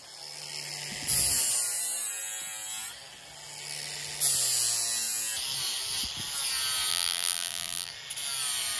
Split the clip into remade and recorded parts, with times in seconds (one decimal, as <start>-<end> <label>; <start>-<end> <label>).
0.0-6.9 recorded; 6.9-7.9 remade; 7.9-8.8 recorded